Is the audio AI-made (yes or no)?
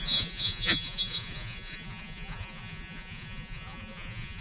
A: yes